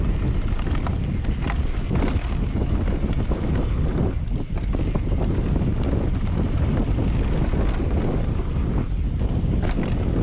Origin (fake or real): real